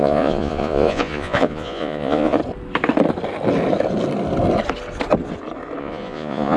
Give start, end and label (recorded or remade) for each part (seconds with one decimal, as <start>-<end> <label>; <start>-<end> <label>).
0.0-2.4 remade; 2.4-5.8 recorded; 5.8-6.6 remade